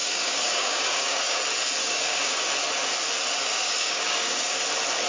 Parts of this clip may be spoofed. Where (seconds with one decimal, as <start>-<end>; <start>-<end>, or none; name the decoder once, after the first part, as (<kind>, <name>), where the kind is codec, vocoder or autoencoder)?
0.0-1.4 (codec, DAC); 1.8-2.4; 3.5-4.6